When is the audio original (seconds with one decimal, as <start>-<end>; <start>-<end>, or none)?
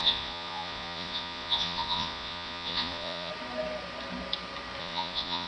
3.3-4.8